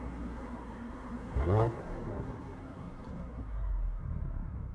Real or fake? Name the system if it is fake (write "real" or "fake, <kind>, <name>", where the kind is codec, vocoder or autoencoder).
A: fake, codec, SNAC